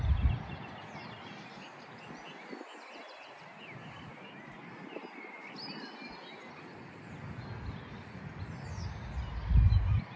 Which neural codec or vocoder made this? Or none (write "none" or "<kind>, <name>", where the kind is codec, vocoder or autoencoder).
none